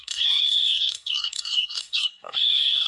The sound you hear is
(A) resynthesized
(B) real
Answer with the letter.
A